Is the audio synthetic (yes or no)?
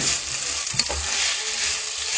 no